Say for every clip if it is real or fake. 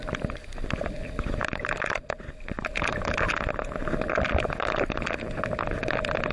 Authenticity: real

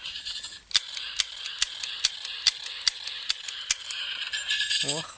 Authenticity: real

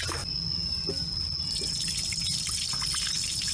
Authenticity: real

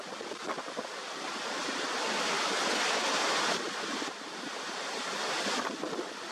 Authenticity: real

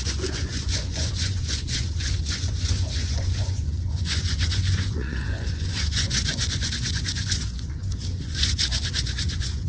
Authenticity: fake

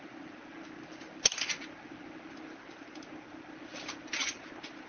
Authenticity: real